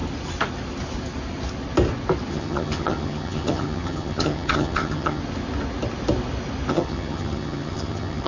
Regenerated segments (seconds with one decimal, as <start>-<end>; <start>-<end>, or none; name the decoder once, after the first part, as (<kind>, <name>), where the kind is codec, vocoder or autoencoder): 2.3-5.2 (vocoder, HiFi-GAN); 6.7-8.3